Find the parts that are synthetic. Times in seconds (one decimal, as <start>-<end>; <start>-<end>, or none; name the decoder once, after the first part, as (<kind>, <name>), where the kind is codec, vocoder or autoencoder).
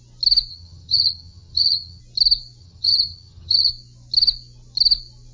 0.5-2.0 (vocoder, HiFi-GAN); 2.6-3.7